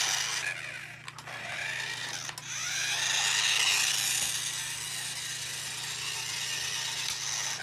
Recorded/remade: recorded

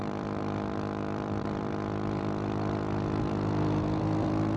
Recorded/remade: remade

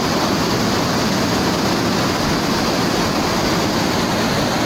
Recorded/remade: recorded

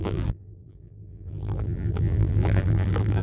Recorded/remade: remade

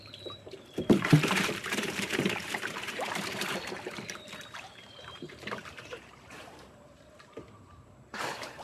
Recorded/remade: remade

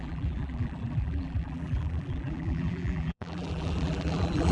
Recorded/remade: remade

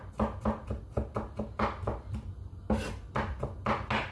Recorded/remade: recorded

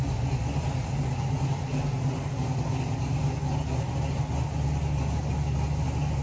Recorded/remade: recorded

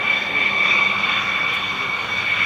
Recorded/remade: recorded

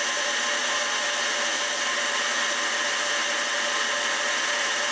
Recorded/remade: recorded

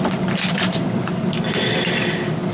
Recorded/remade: remade